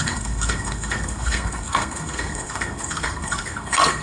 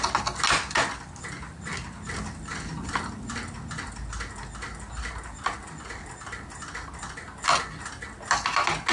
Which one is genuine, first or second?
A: second